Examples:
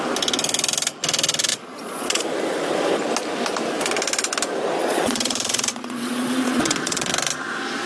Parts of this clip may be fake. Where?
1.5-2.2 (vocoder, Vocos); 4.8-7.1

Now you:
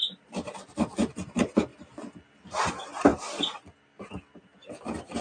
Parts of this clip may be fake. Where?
none